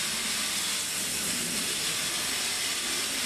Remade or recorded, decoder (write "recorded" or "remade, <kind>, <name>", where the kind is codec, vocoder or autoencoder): recorded